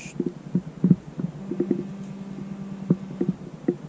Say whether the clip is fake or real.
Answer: real